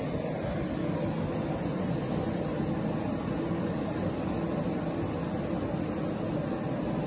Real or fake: real